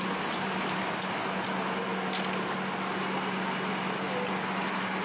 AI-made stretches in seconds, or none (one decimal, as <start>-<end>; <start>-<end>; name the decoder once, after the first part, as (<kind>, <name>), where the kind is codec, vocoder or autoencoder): none